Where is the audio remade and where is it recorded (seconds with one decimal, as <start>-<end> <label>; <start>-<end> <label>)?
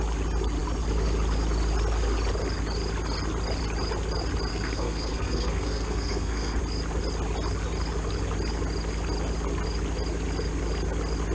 0.0-4.5 recorded; 4.5-6.6 remade; 6.6-11.3 recorded